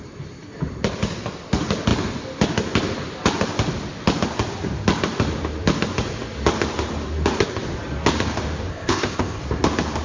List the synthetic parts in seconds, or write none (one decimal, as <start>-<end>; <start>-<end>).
8.7-9.4